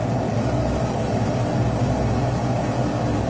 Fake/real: real